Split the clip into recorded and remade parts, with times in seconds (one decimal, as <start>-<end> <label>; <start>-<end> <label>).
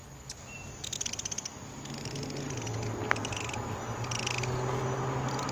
0.0-3.2 recorded; 3.2-3.8 remade; 3.8-5.5 recorded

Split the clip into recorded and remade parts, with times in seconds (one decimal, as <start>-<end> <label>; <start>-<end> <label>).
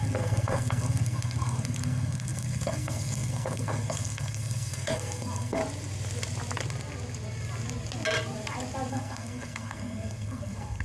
0.0-5.6 remade; 5.6-8.9 recorded; 8.9-10.8 remade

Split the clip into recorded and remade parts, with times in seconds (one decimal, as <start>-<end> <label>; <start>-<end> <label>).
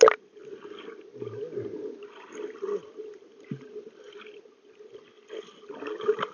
0.0-6.3 recorded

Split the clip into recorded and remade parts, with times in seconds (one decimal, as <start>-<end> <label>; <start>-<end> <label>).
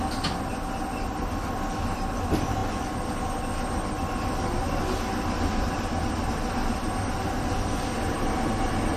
0.0-9.0 recorded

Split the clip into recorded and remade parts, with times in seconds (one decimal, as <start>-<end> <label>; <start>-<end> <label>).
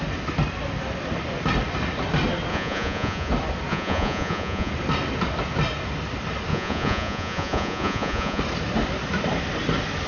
0.0-2.5 recorded; 2.5-3.3 remade; 3.3-3.7 recorded; 3.7-4.7 remade; 4.7-6.5 recorded; 6.5-8.4 remade; 8.4-10.1 recorded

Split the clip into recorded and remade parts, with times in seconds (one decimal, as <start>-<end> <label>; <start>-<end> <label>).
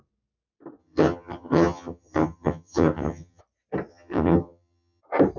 0.0-0.8 recorded; 0.8-3.4 remade; 3.4-3.9 recorded; 3.9-5.0 remade; 5.0-5.4 recorded